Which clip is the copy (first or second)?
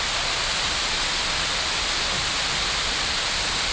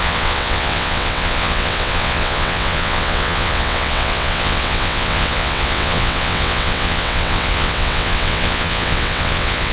second